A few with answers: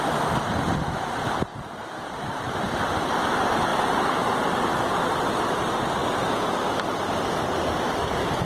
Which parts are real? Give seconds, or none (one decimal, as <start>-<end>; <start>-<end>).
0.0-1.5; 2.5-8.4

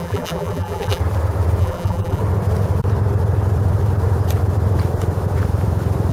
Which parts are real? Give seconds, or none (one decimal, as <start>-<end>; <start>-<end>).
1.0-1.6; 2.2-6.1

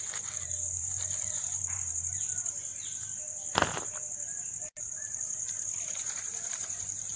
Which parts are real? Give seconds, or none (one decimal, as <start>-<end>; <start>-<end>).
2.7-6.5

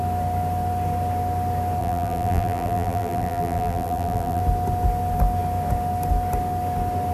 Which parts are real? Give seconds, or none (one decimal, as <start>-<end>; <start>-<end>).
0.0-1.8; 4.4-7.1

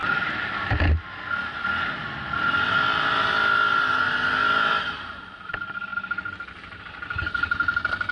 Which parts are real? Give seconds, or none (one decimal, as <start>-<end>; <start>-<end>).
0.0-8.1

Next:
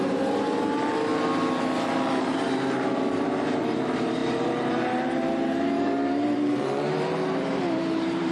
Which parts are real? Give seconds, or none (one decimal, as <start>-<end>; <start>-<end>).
1.1-2.2

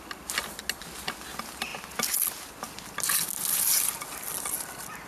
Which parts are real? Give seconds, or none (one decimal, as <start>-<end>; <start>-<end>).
0.0-5.1

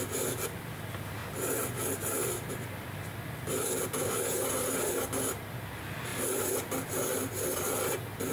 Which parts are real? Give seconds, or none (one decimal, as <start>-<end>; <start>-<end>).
0.0-6.1; 7.9-8.3